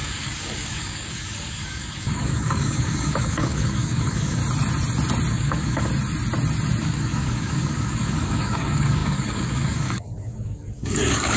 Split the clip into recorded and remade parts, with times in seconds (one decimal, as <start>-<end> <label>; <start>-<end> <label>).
0.0-4.4 remade; 4.4-5.3 recorded; 5.3-5.9 remade; 5.9-6.8 recorded; 6.8-11.4 remade